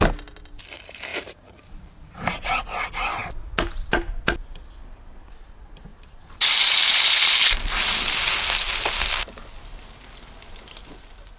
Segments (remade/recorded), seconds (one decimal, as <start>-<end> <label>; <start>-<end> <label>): 0.0-1.1 recorded; 1.1-2.6 remade; 2.6-5.9 recorded; 5.9-7.7 remade; 7.7-11.4 recorded